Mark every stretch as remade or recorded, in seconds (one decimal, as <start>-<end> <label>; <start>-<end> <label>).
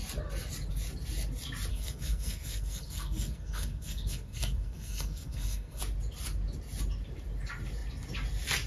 0.0-1.7 recorded; 1.7-5.8 remade; 5.8-8.7 recorded